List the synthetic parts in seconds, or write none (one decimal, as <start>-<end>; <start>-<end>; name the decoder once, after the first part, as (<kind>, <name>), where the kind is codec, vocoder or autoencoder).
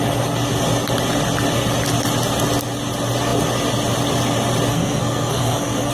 4.7-5.9 (codec, SNAC)